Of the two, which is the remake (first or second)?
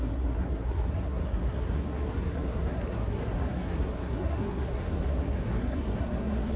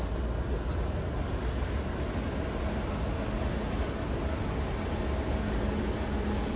first